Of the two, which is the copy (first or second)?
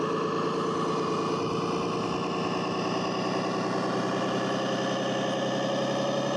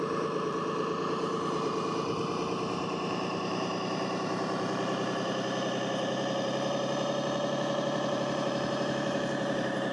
second